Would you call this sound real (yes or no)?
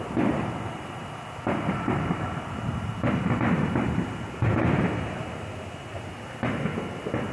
yes